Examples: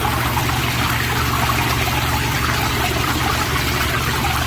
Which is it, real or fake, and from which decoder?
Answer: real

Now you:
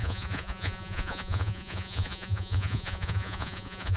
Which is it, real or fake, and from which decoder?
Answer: fake, vocoder, Vocos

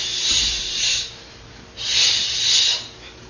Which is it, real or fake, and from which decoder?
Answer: real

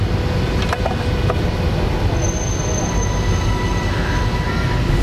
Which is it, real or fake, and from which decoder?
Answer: real